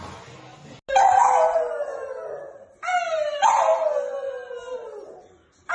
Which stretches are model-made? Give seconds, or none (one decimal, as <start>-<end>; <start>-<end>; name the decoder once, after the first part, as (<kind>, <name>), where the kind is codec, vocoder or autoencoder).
none